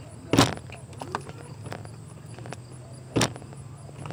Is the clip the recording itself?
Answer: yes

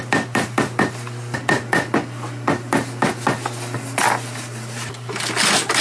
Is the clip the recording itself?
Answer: yes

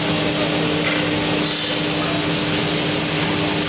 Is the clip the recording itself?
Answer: yes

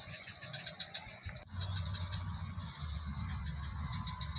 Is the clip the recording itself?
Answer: no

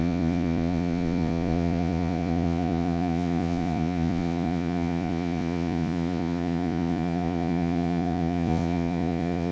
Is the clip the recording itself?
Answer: no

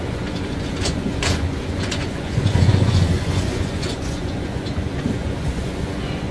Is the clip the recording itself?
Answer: no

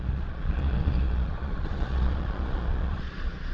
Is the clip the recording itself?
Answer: no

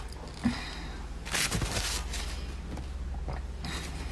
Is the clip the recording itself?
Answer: yes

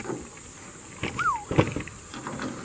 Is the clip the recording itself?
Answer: yes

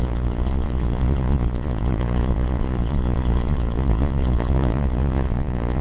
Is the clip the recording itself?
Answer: no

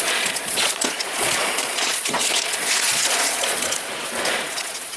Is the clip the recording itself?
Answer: no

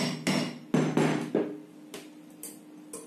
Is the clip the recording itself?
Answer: yes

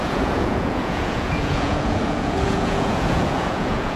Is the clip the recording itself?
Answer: no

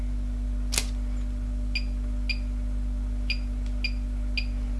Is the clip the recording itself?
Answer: yes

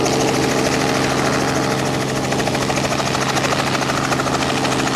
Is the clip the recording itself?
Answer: yes